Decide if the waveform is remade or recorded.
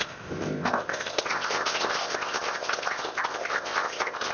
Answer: remade